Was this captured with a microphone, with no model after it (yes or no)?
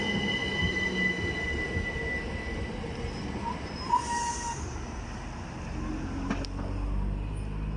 yes